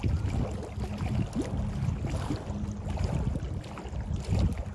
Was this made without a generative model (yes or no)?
yes